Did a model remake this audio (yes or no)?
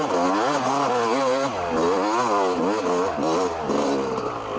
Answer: no